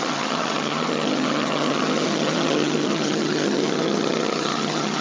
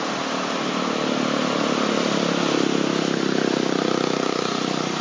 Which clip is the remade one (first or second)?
first